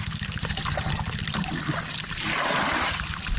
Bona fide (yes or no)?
yes